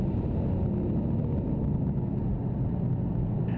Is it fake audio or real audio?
real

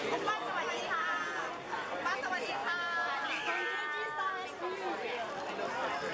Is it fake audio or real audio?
real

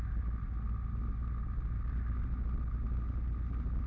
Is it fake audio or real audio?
real